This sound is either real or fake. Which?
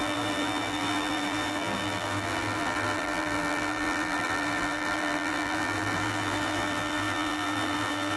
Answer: fake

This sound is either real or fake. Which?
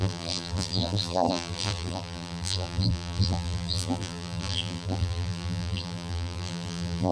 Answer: fake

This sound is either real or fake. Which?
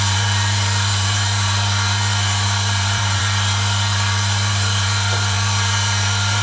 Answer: fake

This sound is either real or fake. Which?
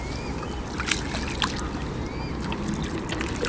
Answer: real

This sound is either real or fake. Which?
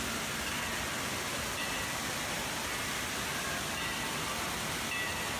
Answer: real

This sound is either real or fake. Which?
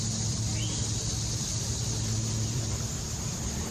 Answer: fake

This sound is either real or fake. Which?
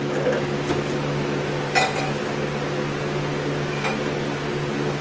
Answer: real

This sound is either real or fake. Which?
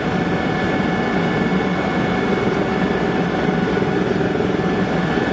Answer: real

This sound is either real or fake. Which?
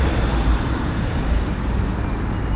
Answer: fake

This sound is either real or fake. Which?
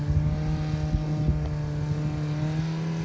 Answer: real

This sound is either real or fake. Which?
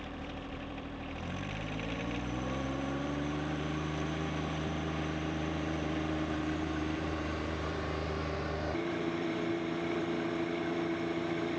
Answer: fake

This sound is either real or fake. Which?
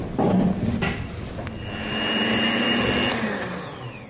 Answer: real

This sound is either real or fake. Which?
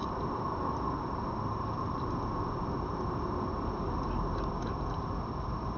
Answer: real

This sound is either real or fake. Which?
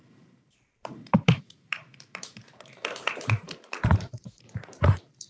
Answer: fake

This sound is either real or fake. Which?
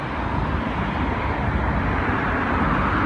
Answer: real